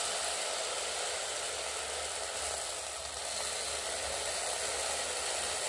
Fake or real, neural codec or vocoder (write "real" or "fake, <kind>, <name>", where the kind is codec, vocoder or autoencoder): real